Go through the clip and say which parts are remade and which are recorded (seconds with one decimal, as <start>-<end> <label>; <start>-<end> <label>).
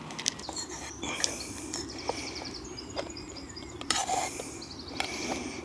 0.0-4.0 remade; 4.0-5.6 recorded